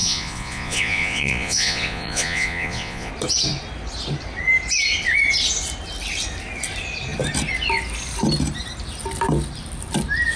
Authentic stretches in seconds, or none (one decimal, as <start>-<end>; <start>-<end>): 3.1-10.4